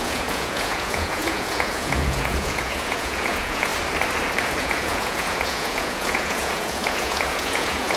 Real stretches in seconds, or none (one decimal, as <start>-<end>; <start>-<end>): 3.7-4.6